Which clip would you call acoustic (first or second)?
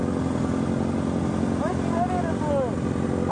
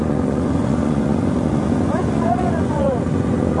first